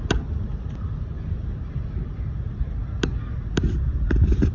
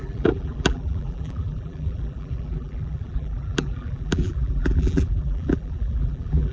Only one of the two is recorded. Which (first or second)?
first